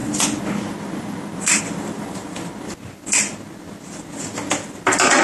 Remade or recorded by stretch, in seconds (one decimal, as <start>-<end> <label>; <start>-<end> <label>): 0.0-5.2 recorded